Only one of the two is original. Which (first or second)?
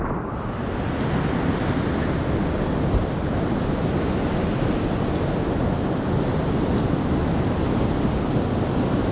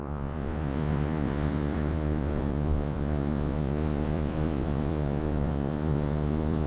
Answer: first